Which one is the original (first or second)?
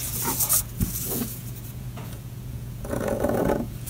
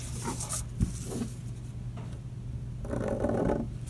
second